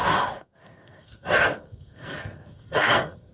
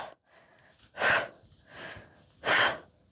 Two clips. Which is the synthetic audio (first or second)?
first